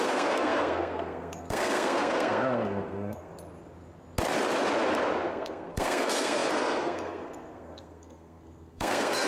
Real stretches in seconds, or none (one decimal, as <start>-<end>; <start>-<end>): 3.3-5.3